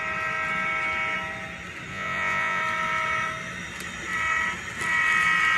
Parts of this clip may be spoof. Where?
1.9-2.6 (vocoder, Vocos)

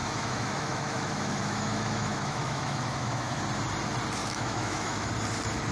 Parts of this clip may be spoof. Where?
0.0-3.4 (autoencoder, DAC-VAE); 4.2-5.1

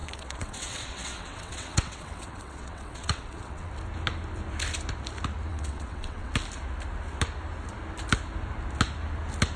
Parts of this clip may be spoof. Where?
0.0-3.7 (vocoder, WaveNeXt); 5.5-6.3

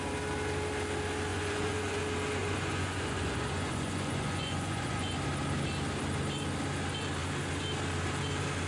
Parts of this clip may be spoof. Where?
1.3-2.0 (vocoder, Vocos); 2.4-5.1

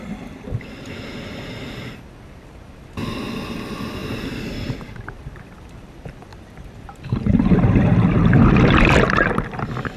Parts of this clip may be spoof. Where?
3.0-3.6 (vocoder, BigVGAN v2); 6.3-7.8

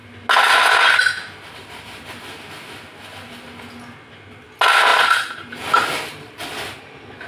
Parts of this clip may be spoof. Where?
4.9-5.6 (vocoder, BigVGAN v2)

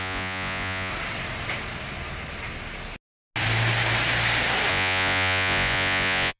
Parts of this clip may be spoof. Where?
0.0-0.9 (vocoder, Vocos); 4.7-6.4